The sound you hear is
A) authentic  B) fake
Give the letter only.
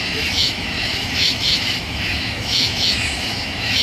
B